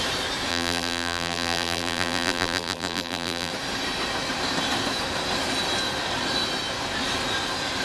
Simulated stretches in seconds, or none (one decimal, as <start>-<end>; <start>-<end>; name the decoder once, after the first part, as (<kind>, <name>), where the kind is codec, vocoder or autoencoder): 0.5-3.5 (vocoder, BigVGAN v2)